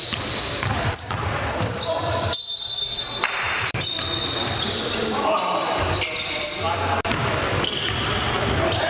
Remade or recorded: remade